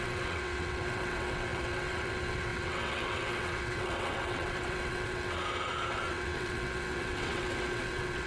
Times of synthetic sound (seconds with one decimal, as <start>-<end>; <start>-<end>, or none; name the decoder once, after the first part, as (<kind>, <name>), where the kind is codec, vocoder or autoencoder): 0.0-5.4 (vocoder, WaveNeXt); 5.9-8.3